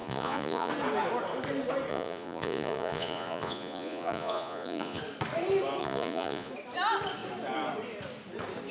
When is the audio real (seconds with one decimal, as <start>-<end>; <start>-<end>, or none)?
0.7-1.9; 5.0-5.8; 6.5-8.7